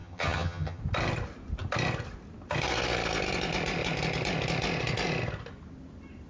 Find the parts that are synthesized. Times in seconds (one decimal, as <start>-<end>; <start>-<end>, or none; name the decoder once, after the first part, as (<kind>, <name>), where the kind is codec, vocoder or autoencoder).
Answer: 0.0-0.8 (vocoder, HiFi-GAN)